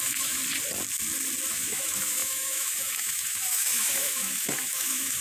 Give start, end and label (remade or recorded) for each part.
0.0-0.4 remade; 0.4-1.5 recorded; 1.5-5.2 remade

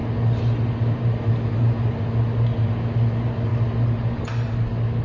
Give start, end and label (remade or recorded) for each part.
0.0-5.0 recorded

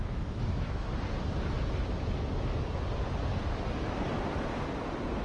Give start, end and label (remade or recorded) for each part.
0.0-0.9 remade; 0.9-5.2 recorded

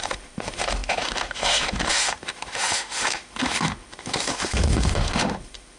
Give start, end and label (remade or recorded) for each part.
0.0-5.8 remade

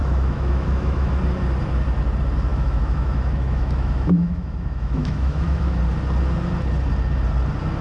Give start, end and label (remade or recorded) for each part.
0.0-1.2 remade; 1.2-2.5 recorded; 2.5-5.8 remade; 5.8-7.8 recorded

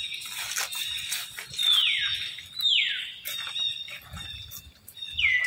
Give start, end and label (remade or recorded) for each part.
0.0-5.5 recorded

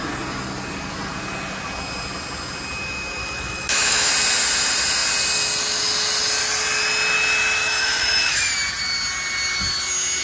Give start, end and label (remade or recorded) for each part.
0.0-3.2 recorded; 3.2-4.1 remade; 4.1-7.6 recorded; 7.6-8.5 remade; 8.5-10.2 recorded

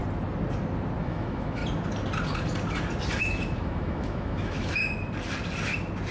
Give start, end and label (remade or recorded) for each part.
0.0-1.0 recorded; 1.0-1.6 remade; 1.6-3.2 recorded; 3.2-4.8 remade; 4.8-6.1 recorded